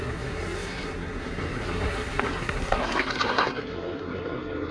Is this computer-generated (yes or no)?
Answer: yes